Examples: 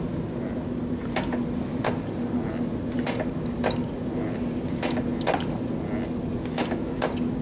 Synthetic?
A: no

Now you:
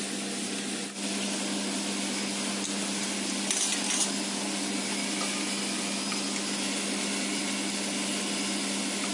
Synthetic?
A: no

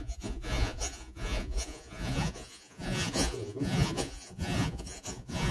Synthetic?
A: yes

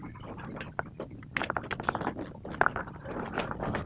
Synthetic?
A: no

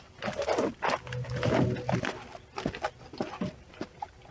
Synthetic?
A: no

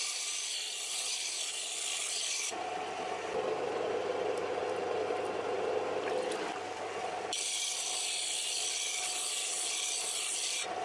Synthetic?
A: no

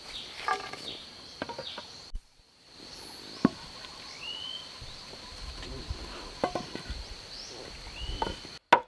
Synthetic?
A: no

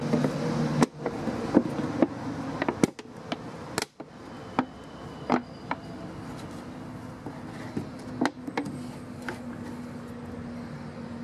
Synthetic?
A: no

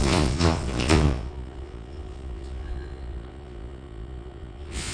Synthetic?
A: yes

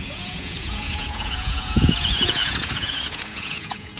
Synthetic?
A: yes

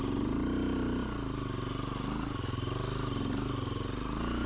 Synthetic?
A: no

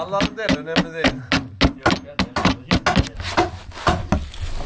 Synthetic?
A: no